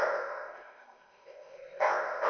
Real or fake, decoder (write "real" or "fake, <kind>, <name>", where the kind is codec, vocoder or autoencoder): fake, codec, ZipCodec